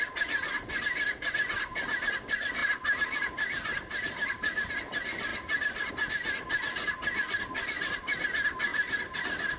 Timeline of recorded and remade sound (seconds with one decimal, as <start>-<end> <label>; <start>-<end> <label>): 0.0-2.6 recorded; 2.6-4.7 remade; 4.7-5.3 recorded; 5.3-5.9 remade; 5.9-8.7 recorded; 8.7-9.2 remade; 9.2-9.6 recorded